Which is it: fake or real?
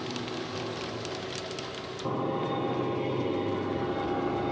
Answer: real